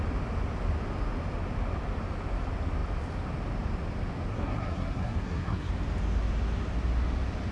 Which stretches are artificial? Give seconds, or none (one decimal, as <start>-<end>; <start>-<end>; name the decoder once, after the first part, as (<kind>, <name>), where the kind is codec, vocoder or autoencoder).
4.3-5.7 (codec, SNAC)